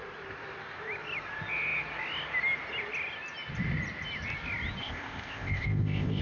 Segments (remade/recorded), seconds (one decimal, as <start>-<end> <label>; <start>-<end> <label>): 0.0-4.8 recorded; 4.8-6.2 remade